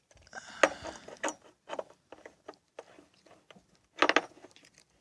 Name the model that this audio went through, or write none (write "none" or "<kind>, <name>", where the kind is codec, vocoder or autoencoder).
none